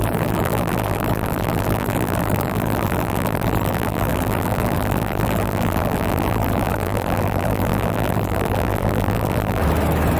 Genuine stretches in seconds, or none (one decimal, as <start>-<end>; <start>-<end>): 9.6-10.2